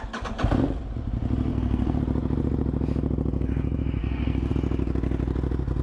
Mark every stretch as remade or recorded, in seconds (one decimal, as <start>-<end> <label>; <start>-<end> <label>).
0.0-1.5 recorded; 1.5-2.0 remade; 2.0-4.0 recorded; 4.0-4.5 remade; 4.5-5.8 recorded